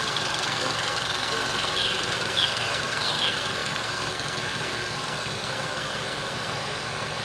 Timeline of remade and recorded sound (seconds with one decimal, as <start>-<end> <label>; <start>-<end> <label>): 0.0-7.2 remade